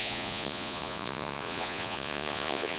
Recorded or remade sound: remade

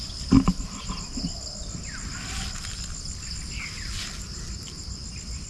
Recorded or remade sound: recorded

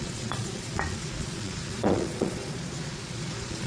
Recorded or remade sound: remade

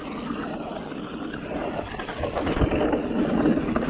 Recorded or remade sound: recorded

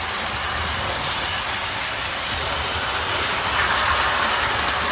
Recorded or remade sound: remade